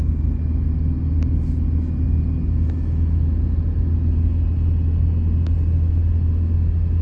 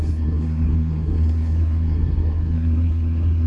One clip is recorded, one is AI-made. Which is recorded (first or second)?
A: first